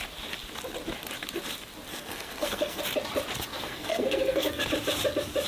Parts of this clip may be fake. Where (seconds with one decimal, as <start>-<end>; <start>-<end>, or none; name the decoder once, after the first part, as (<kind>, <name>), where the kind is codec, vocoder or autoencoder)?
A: 1.9-2.8 (codec, SNAC); 3.5-4.6